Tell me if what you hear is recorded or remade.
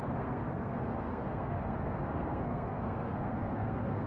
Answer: remade